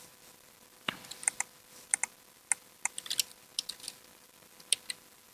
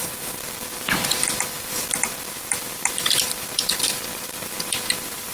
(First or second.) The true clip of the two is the first